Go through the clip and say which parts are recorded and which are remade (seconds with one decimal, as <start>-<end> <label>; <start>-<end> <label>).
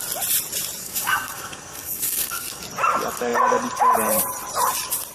0.0-0.8 recorded; 0.8-2.6 remade; 2.6-5.1 recorded